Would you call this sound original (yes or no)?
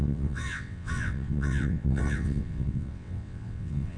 no